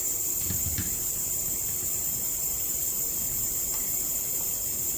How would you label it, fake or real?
fake